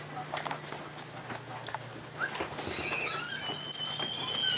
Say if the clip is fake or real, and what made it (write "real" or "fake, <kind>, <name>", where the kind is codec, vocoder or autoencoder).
real